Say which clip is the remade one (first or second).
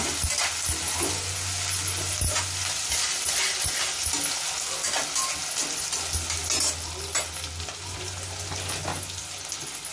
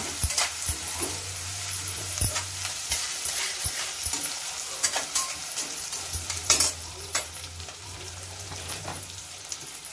second